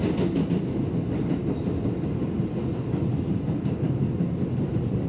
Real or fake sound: real